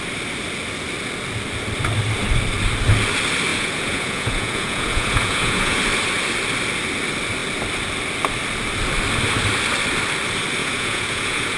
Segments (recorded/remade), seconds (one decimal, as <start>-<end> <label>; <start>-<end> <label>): 0.0-3.5 recorded; 3.5-5.8 remade; 5.8-10.6 recorded; 10.6-11.6 remade